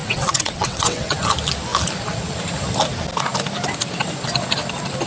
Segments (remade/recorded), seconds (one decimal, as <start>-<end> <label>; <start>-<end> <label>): 0.0-1.2 remade; 1.2-5.1 recorded